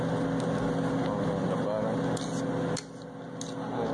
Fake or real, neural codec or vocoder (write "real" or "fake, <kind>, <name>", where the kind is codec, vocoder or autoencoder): real